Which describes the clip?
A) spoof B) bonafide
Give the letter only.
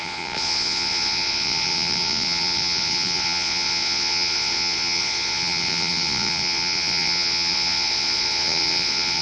A